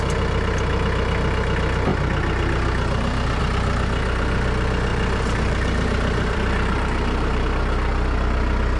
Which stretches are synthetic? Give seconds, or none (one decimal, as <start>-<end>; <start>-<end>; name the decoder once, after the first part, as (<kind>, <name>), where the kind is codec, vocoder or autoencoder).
4.9-7.4 (vocoder, BigVGAN v2)